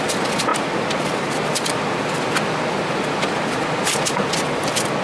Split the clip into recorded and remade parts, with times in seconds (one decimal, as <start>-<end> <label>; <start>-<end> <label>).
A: 0.0-5.0 recorded